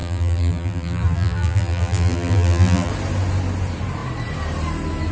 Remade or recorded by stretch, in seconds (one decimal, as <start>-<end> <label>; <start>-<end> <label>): 0.0-2.9 remade; 2.9-5.1 recorded